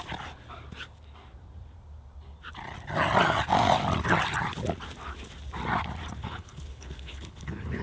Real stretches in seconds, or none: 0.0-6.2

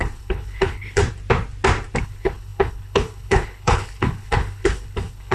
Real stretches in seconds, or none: 1.0-2.0